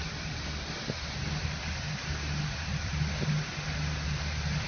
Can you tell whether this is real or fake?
real